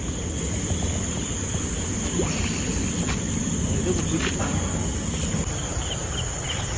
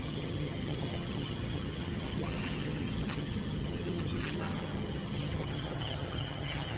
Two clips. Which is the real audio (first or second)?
first